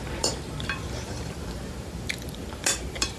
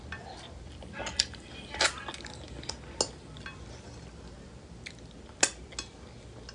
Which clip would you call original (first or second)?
second